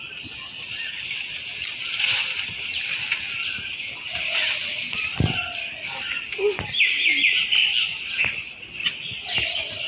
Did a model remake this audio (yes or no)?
no